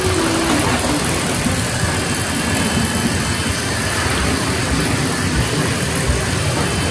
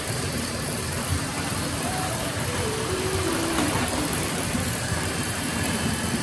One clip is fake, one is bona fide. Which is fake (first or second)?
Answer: second